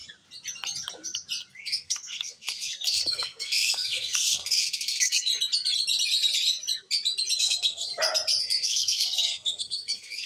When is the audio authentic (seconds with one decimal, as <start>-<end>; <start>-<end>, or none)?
0.0-1.5; 5.3-7.4; 7.9-8.4